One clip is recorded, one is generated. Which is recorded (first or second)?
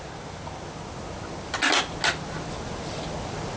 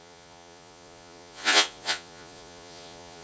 first